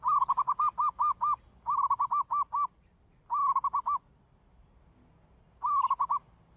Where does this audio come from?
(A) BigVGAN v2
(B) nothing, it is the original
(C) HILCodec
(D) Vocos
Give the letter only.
B